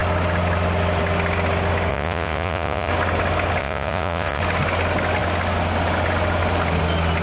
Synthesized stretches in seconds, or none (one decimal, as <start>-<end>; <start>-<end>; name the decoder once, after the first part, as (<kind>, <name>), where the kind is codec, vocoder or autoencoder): 1.9-2.9 (vocoder, Vocos); 3.6-4.4